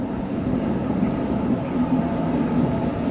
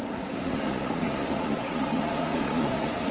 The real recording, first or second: first